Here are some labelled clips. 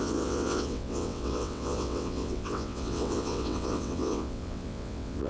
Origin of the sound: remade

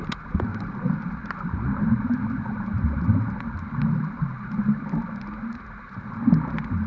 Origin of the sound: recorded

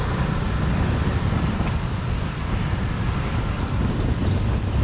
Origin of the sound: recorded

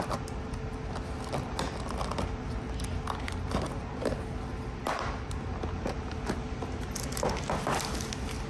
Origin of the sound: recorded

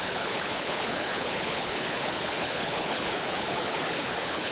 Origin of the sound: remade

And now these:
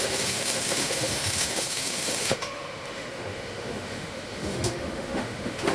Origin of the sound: remade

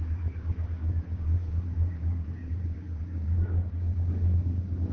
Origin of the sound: remade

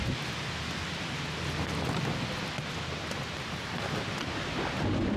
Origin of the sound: recorded